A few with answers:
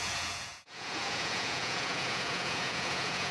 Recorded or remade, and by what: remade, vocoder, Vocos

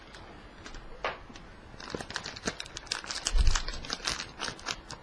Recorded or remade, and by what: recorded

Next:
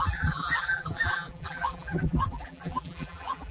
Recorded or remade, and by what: remade, vocoder, BigVGAN v2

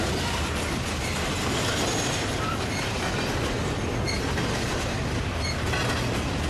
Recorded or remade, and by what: recorded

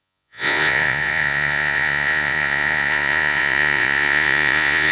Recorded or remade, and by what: remade, vocoder, Vocos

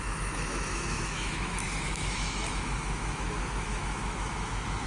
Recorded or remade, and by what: remade, autoencoder, DAC-VAE